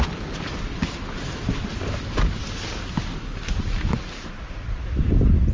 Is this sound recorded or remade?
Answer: recorded